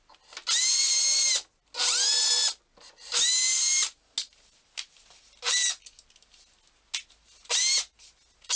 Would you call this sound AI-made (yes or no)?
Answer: no